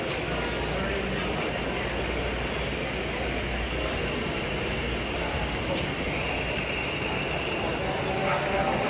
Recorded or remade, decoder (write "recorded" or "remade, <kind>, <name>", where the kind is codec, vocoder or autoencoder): recorded